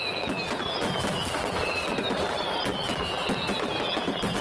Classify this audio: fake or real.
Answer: fake